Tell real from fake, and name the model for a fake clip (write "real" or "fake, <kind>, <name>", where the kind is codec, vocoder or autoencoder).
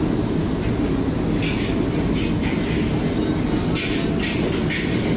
real